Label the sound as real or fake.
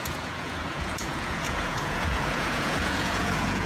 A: fake